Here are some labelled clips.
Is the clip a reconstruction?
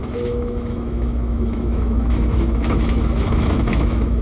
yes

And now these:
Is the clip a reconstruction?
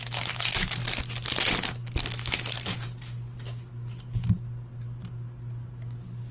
no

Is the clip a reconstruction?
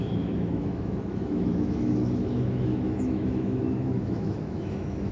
yes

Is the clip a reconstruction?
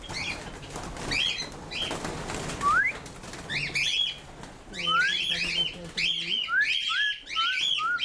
no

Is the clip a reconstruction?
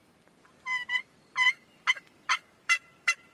yes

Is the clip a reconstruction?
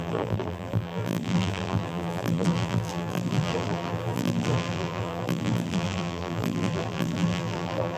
yes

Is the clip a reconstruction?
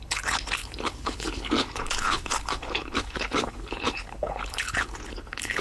yes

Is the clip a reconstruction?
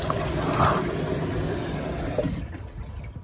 no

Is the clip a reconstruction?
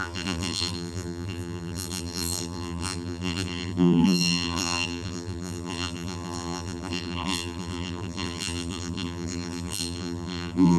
yes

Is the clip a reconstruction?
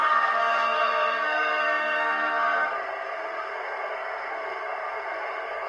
yes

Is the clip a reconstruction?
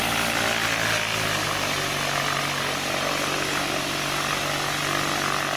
no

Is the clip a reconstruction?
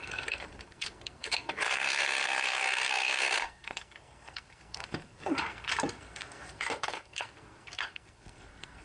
yes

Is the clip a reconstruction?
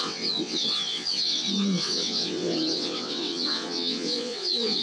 yes